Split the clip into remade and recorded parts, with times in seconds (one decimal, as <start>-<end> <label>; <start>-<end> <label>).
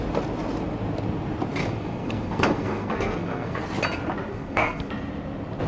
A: 0.0-1.6 recorded; 1.6-3.6 remade; 3.6-4.3 recorded; 4.3-4.9 remade; 4.9-5.7 recorded